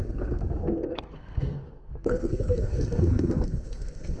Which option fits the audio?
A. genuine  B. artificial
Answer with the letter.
B